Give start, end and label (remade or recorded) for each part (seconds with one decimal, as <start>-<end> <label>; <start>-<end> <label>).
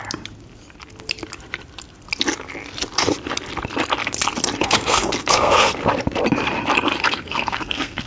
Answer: 0.0-4.6 recorded; 4.6-5.8 remade; 5.8-7.0 recorded; 7.0-8.1 remade